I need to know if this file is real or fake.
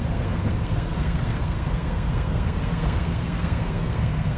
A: fake